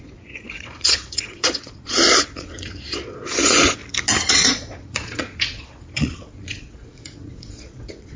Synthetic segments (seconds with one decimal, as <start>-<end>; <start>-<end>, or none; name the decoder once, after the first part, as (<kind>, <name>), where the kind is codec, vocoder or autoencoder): 0.0-3.8 (vocoder, Vocos); 4.3-8.2